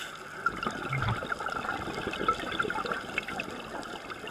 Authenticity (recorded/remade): recorded